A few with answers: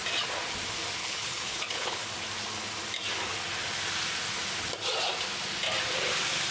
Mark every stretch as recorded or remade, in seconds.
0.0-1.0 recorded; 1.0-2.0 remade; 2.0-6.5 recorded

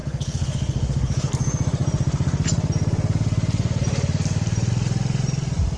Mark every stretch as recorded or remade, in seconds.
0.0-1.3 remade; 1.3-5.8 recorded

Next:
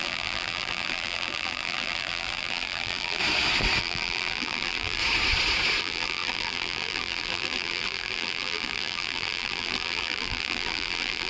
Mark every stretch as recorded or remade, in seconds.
0.0-3.2 remade; 3.2-3.8 recorded; 3.8-5.0 remade; 5.0-5.8 recorded; 5.8-11.3 remade